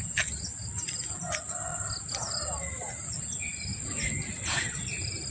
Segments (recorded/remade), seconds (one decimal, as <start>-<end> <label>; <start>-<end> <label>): 0.0-1.7 recorded; 1.7-3.2 remade; 3.2-3.7 recorded; 3.7-5.3 remade